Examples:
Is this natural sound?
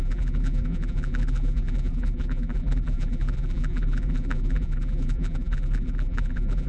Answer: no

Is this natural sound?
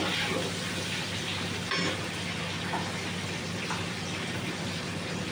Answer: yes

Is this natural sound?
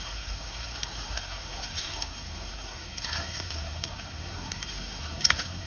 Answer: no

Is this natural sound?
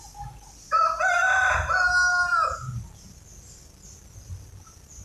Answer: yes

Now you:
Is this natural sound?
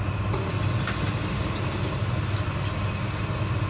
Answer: yes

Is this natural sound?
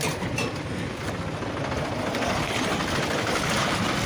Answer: no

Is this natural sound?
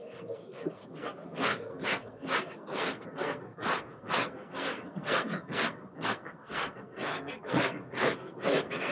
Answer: no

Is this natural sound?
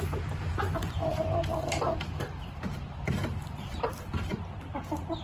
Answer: no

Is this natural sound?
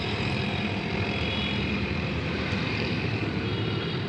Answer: no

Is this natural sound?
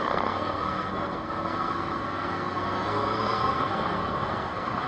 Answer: no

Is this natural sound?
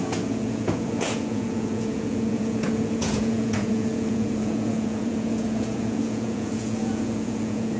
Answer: no